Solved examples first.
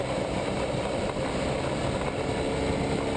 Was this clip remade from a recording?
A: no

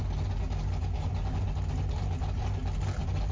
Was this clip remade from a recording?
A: no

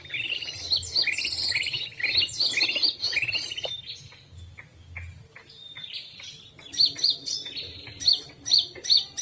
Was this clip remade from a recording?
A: no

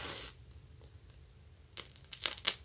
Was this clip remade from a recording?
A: no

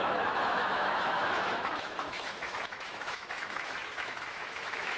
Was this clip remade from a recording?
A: yes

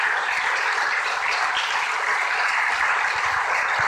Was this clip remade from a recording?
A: no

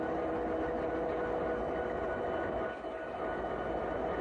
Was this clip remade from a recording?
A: no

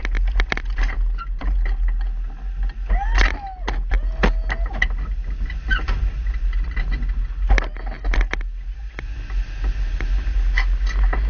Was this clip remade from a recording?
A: no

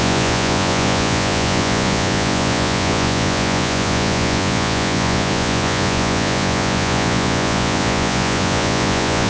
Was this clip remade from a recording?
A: yes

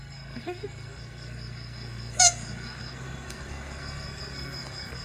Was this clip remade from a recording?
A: yes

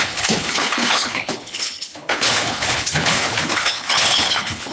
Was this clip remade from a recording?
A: yes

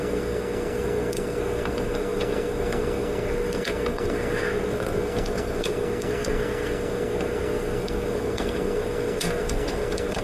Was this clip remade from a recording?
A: yes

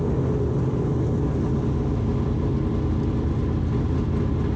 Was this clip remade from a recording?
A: no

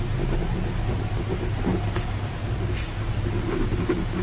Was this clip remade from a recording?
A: no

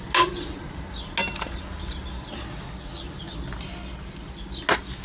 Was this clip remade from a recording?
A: no